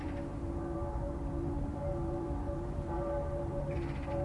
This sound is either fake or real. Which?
fake